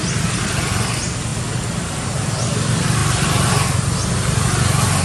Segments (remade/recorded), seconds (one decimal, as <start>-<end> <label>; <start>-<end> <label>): 0.0-5.0 recorded